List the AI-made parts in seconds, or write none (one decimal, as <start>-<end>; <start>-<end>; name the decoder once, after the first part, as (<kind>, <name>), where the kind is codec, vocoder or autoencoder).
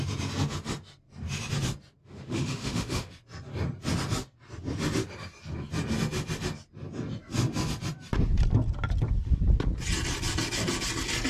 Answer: 2.0-3.1 (autoencoder, DAC-VAE)